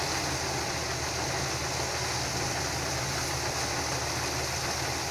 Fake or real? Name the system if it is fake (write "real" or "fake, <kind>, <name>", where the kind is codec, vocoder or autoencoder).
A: real